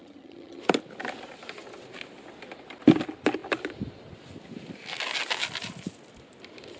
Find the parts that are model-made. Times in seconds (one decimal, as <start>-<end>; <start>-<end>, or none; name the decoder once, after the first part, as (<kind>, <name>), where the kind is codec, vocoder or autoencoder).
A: 0.0-0.6 (vocoder, HiFi-GAN)